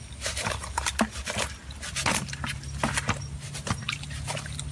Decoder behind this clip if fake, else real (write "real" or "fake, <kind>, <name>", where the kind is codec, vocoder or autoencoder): real